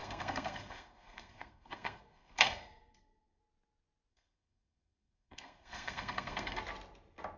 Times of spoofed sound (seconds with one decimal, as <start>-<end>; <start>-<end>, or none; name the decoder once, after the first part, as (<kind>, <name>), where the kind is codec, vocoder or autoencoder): 0.0-3.4 (codec, SNAC); 4.1-6.6